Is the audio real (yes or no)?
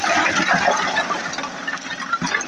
yes